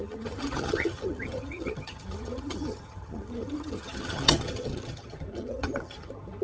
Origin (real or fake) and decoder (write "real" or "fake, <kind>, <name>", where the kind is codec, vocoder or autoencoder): fake, vocoder, HiFi-GAN